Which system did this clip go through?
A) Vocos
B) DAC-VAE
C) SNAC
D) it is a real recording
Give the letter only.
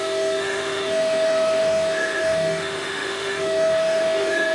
B